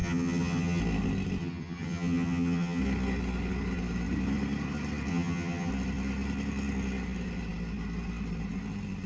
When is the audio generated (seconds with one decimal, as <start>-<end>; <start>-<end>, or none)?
0.0-0.8; 1.4-2.8; 5.1-5.7